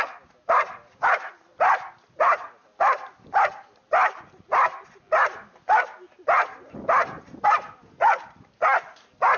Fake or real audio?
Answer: real